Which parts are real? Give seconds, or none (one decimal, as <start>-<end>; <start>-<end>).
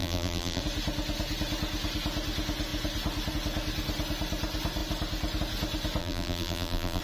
0.6-6.0